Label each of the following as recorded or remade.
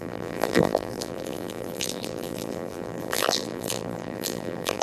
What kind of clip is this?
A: remade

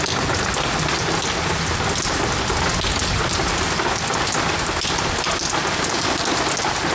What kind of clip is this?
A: recorded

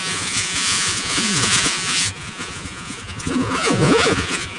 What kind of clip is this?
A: remade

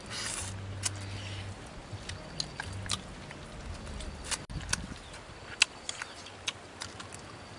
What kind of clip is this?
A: recorded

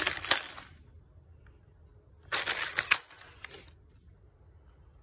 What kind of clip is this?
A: recorded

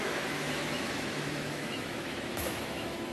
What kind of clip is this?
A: remade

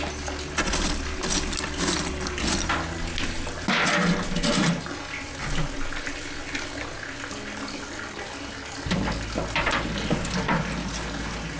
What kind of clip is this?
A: recorded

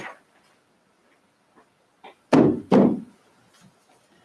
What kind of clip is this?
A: recorded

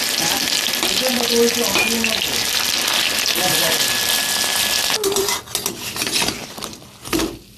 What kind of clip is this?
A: recorded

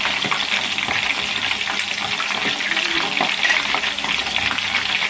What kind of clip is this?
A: recorded